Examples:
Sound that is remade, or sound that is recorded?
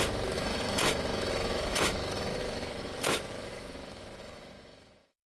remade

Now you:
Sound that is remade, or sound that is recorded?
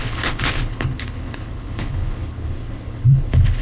remade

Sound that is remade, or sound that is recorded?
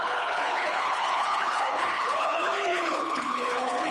remade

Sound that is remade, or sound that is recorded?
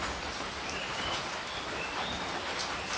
recorded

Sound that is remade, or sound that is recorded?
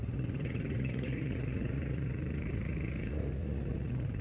remade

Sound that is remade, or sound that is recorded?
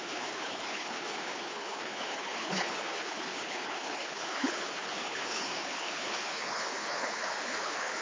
remade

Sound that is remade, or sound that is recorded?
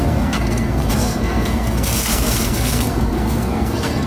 remade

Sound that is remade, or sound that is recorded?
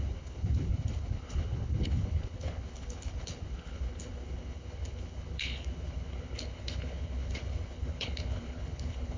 remade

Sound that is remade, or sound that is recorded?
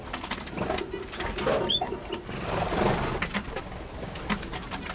recorded